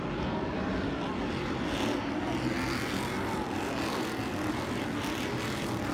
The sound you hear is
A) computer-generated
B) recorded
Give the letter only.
B